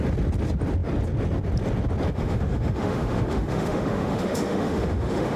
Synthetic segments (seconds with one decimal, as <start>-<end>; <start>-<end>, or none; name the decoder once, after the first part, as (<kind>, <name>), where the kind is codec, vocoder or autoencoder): 2.1-5.4 (autoencoder, DAC-VAE)